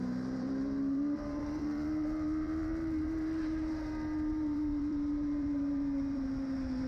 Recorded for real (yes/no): no